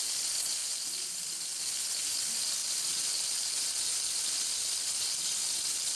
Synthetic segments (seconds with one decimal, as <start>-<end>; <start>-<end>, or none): 0.6-1.6; 2.6-6.0